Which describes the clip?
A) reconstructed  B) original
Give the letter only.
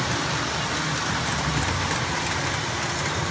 B